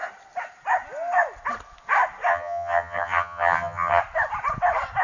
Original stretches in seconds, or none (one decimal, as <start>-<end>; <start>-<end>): 0.0-2.3; 4.0-5.0